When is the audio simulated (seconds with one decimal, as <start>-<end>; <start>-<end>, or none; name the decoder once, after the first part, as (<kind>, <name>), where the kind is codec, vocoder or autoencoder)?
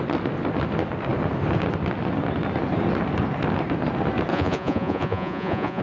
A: 4.3-5.8 (vocoder, Vocos)